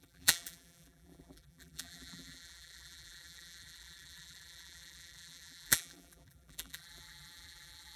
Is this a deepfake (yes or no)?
yes